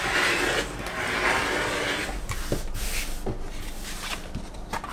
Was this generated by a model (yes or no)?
no